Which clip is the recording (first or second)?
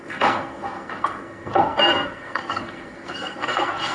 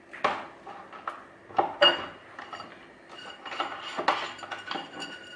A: second